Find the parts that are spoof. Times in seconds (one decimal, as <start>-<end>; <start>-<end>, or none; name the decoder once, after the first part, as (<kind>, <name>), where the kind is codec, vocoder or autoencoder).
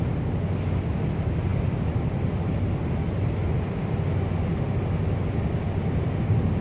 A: none